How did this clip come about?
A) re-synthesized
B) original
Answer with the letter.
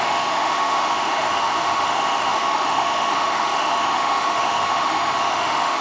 A